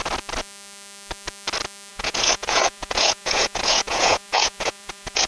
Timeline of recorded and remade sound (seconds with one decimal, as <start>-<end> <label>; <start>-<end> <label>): 0.0-1.9 recorded; 1.9-5.3 remade

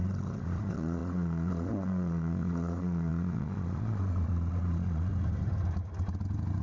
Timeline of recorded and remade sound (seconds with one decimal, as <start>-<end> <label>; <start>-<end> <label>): 0.0-5.1 remade; 5.1-6.6 recorded